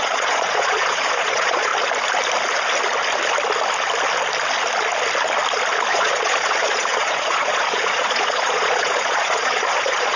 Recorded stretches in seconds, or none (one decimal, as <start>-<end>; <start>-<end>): 1.7-5.9